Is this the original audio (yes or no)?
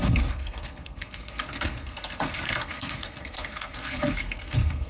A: no